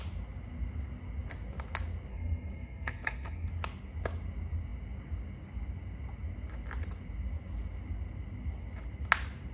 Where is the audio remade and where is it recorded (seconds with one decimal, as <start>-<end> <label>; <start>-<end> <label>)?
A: 0.0-2.1 recorded; 2.1-3.5 remade; 3.5-9.5 recorded